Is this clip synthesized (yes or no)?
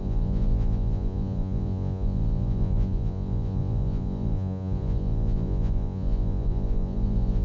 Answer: yes